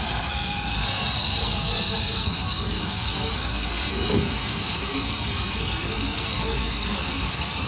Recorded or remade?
remade